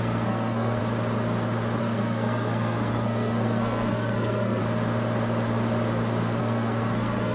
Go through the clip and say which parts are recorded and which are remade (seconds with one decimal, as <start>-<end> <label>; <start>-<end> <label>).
0.0-0.8 remade; 0.8-1.8 recorded; 1.8-4.6 remade; 4.6-6.4 recorded; 6.4-7.3 remade